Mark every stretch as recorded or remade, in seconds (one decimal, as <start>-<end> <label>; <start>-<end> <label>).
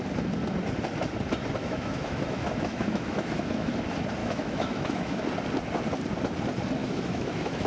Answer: 0.0-1.6 recorded; 1.6-3.7 remade; 3.7-4.2 recorded; 4.2-5.2 remade; 5.2-6.8 recorded; 6.8-7.7 remade